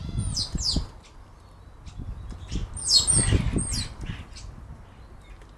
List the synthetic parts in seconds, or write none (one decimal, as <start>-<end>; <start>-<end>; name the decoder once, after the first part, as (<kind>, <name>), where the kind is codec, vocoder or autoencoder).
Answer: none